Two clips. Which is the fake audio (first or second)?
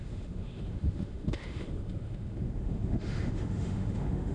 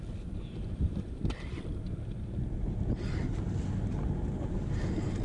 first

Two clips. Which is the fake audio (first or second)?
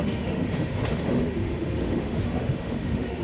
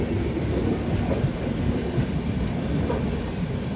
first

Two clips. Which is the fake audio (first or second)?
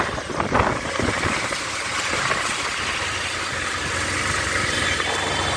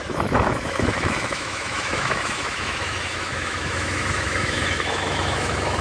second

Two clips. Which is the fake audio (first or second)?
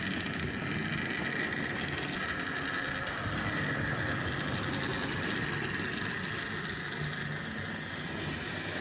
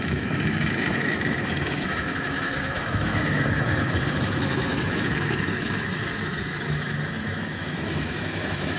second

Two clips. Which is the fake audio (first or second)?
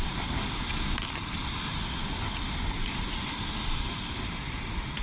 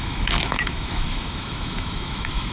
second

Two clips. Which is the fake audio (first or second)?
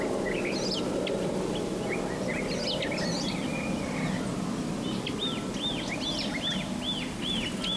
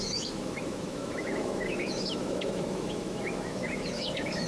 second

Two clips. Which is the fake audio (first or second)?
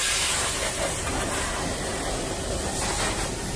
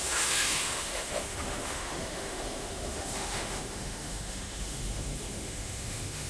second